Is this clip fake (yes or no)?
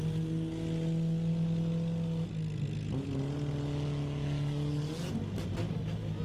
no